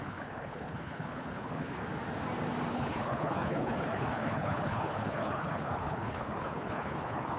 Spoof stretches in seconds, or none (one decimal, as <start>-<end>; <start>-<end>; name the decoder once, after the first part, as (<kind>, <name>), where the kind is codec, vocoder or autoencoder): 0.0-1.8 (codec, HILCodec); 2.7-7.4